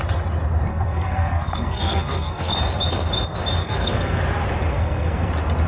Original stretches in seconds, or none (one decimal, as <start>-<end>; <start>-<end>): 0.0-0.7; 2.5-3.6; 4.2-4.7; 5.3-5.7